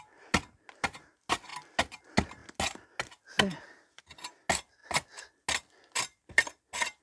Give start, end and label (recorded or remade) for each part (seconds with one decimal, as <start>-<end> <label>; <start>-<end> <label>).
0.0-7.0 recorded